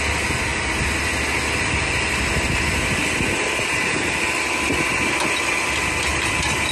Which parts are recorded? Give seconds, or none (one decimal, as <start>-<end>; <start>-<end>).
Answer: 0.0-6.7